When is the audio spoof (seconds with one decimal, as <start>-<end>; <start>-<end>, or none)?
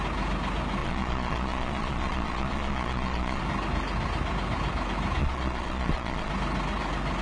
0.8-3.4; 5.2-6.3